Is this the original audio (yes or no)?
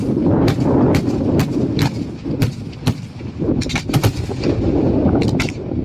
yes